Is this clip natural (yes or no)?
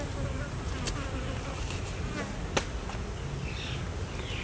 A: yes